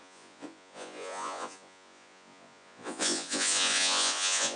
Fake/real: fake